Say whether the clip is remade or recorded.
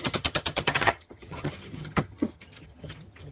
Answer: remade